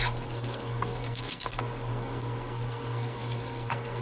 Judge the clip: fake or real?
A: fake